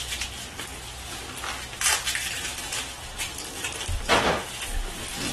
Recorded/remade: recorded